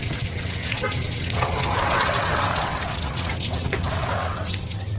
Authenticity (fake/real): fake